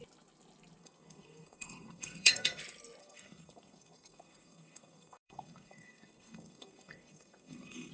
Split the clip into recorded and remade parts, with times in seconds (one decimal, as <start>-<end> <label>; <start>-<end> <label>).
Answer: 0.0-0.8 recorded; 0.8-2.6 remade; 2.6-3.0 recorded; 3.0-7.9 remade